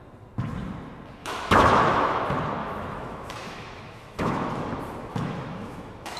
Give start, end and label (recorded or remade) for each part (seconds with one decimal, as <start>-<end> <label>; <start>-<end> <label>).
0.0-1.2 recorded; 1.2-2.2 remade; 2.2-2.6 recorded; 2.6-4.5 remade; 4.5-5.1 recorded; 5.1-6.2 remade

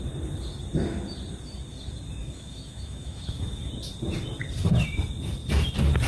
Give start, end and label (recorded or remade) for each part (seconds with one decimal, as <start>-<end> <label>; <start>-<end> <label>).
0.0-2.2 recorded; 2.2-3.7 remade; 3.7-6.1 recorded

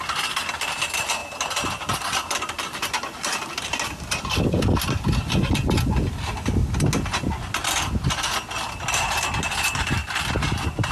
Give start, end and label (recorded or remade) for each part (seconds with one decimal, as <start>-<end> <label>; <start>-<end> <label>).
0.0-10.9 recorded

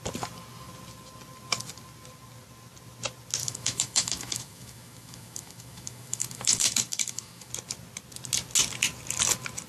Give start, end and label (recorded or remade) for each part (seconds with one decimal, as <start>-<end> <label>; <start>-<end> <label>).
0.0-3.4 recorded; 3.4-7.5 remade; 7.5-9.7 recorded